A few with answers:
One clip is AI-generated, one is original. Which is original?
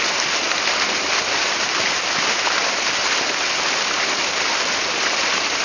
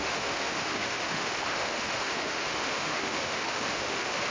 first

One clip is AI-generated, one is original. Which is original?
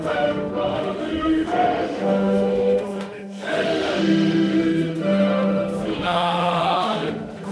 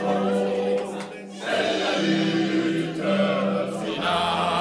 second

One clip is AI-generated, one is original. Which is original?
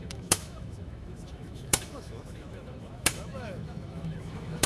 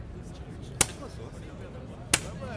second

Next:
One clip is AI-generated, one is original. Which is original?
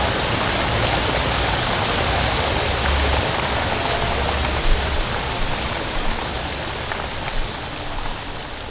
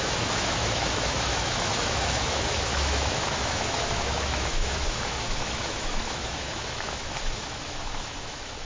first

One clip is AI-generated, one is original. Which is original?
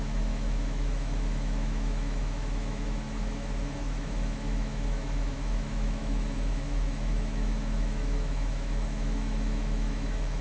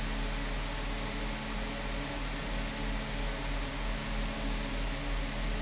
second